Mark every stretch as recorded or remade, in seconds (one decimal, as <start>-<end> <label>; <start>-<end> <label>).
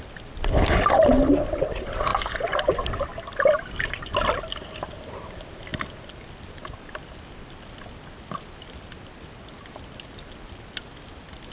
0.0-11.5 recorded